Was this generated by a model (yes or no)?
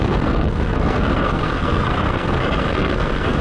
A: yes